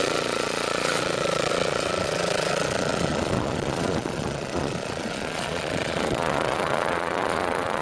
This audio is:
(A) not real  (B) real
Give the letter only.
A